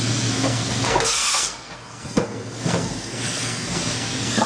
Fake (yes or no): yes